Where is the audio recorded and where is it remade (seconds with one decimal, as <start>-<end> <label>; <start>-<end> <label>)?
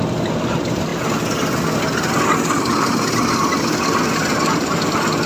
0.0-5.3 recorded